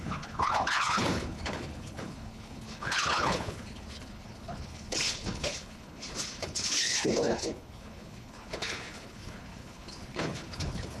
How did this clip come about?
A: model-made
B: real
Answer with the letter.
A